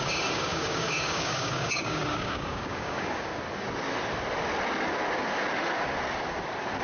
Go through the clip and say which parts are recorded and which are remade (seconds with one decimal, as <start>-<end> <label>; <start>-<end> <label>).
0.0-3.3 remade; 3.3-6.8 recorded